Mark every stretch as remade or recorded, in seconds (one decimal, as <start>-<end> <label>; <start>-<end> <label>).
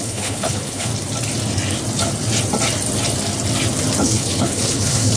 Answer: 0.0-0.9 remade; 0.9-4.0 recorded; 4.0-5.2 remade